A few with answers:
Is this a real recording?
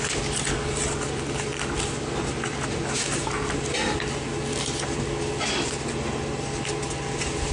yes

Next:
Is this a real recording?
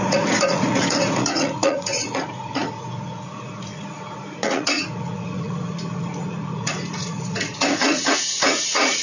no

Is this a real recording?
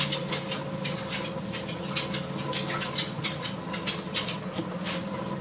yes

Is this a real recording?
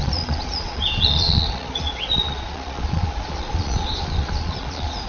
no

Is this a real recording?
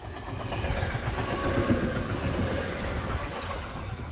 yes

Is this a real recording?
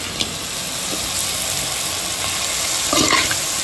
yes